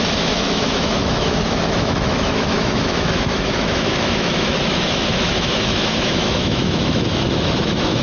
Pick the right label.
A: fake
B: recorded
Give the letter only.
A